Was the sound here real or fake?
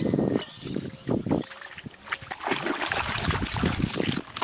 real